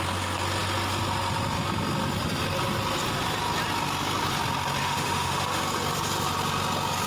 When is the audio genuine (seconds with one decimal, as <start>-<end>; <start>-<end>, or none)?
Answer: 0.0-4.8; 5.6-7.1